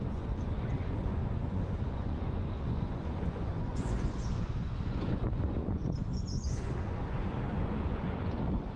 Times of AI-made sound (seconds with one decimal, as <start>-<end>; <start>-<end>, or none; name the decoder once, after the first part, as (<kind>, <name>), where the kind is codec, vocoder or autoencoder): 0.0-8.8 (vocoder, Vocos)